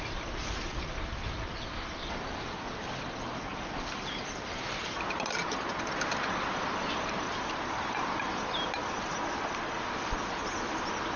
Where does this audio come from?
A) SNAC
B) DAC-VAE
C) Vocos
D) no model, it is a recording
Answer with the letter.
D